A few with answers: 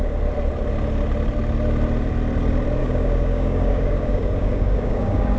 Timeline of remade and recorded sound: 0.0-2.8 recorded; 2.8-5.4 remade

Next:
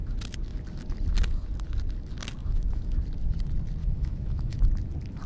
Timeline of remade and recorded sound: 0.0-2.4 recorded; 2.4-3.0 remade; 3.0-3.8 recorded; 3.8-4.6 remade; 4.6-5.3 recorded